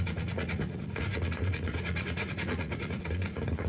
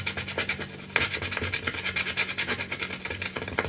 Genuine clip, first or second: second